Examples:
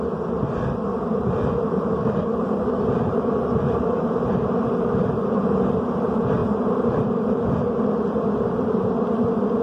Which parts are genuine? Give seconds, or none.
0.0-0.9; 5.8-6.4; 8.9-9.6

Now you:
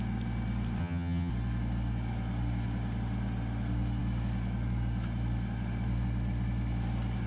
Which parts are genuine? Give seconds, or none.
0.0-0.8; 1.3-7.3

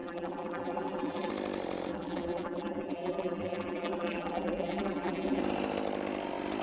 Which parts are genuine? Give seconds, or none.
1.3-1.9; 5.4-6.6

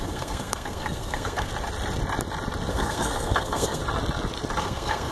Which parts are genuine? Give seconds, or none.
1.5-2.7; 3.8-4.6

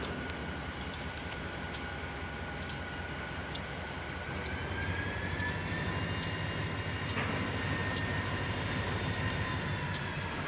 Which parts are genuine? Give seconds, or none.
0.0-10.5

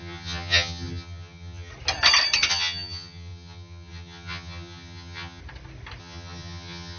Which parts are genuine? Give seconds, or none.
1.7-2.5; 5.4-6.0

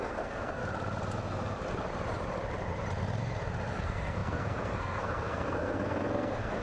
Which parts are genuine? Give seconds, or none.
0.6-3.8

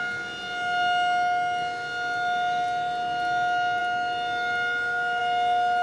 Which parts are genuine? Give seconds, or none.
0.0-5.8